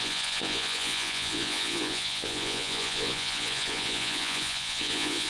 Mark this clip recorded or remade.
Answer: remade